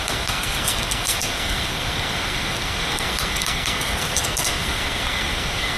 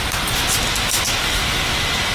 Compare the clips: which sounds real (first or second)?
second